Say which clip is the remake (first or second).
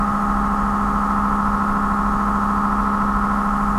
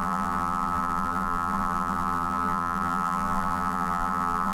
second